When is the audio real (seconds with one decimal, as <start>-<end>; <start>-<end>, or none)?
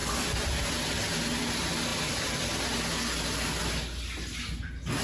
0.0-5.0